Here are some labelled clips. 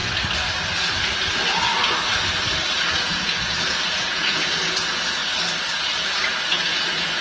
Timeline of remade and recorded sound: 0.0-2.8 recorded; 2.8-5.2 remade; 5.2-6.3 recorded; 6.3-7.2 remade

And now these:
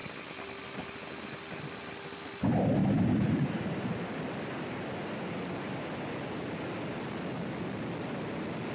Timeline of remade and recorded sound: 0.0-8.7 recorded